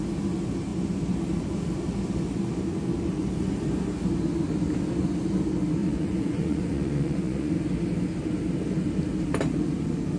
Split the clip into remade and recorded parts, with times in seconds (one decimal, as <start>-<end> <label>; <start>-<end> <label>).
0.0-5.8 recorded; 5.8-7.5 remade; 7.5-10.2 recorded